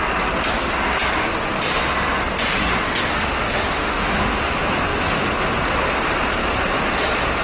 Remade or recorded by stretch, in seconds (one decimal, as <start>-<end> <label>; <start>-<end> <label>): 0.0-3.1 recorded; 3.1-4.5 remade; 4.5-7.4 recorded